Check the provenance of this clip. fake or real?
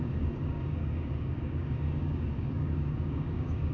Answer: fake